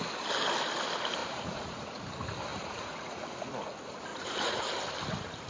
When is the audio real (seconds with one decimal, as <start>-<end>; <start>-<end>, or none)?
0.0-1.2; 2.1-2.5; 3.5-4.1; 4.7-5.5